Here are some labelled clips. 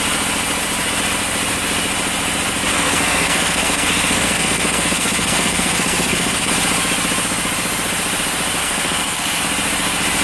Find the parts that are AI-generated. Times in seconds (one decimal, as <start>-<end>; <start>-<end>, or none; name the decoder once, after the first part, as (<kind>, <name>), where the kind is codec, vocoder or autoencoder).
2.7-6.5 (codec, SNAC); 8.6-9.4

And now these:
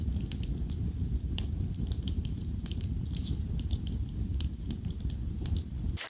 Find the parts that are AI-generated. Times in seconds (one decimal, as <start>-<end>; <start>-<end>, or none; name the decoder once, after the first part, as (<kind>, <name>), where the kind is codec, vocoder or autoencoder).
0.8-3.0 (vocoder, BigVGAN v2); 4.3-4.9

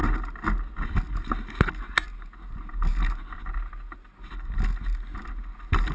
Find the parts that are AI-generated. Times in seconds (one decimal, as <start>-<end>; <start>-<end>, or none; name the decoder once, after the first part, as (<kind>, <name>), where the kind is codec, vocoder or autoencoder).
none

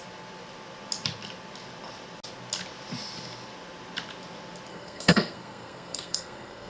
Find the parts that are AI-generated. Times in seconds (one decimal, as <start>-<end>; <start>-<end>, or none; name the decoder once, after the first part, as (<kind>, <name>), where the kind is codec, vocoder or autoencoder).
4.7-6.7 (codec, SNAC)